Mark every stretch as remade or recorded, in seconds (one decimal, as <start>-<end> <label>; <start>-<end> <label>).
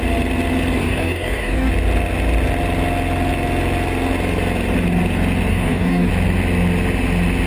0.0-0.8 recorded; 0.8-1.7 remade; 1.7-5.5 recorded; 5.5-6.1 remade; 6.1-7.5 recorded